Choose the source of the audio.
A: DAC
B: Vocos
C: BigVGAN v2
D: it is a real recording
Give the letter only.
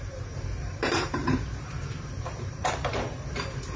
C